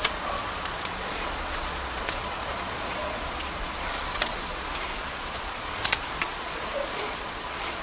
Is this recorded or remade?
remade